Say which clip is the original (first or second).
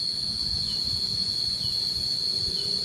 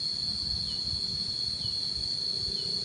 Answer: second